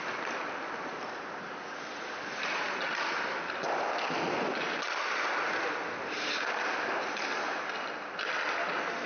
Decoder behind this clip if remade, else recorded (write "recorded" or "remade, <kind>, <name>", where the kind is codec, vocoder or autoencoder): recorded